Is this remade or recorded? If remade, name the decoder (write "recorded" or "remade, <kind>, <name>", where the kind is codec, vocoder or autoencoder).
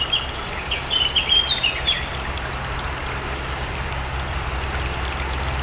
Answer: recorded